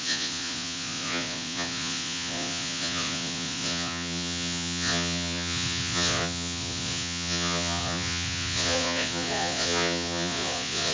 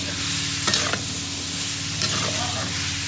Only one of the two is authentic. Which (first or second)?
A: second